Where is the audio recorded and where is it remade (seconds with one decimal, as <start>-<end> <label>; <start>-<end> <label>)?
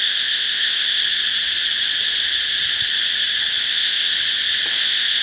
0.0-1.1 remade; 1.1-3.6 recorded; 3.6-4.1 remade; 4.1-4.7 recorded; 4.7-5.2 remade